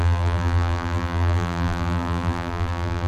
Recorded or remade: remade